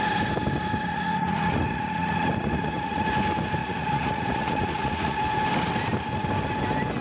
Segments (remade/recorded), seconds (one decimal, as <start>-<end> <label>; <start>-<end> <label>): 0.0-0.9 recorded; 0.9-3.1 remade; 3.1-3.6 recorded; 3.6-5.2 remade; 5.2-7.0 recorded